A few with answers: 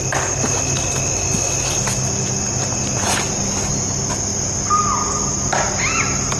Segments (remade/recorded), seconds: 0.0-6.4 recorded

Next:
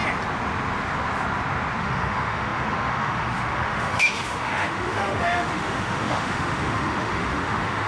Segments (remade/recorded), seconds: 0.0-1.8 recorded; 1.8-7.9 remade

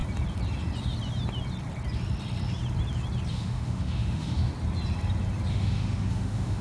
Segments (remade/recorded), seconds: 0.0-3.3 recorded; 3.3-4.5 remade; 4.5-5.5 recorded; 5.5-6.6 remade

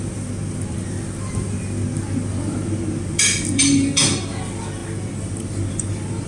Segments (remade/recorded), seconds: 0.0-6.3 recorded

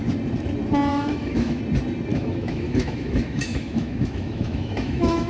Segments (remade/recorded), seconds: 0.0-0.9 recorded; 0.9-1.6 remade; 1.6-2.1 recorded; 2.1-5.3 remade

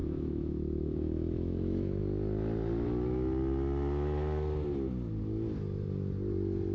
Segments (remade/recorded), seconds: 0.0-2.0 remade; 2.0-6.7 recorded

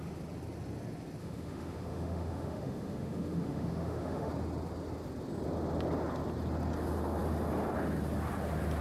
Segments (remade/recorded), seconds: 0.0-1.2 recorded; 1.2-4.3 remade; 4.3-8.8 recorded

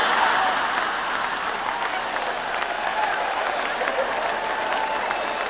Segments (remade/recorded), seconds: 0.0-2.9 recorded; 2.9-3.6 remade; 3.6-5.5 recorded